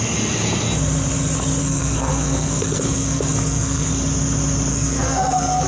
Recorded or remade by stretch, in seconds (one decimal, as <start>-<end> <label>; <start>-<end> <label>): 0.0-1.6 recorded; 1.6-3.9 remade; 3.9-4.7 recorded; 4.7-5.7 remade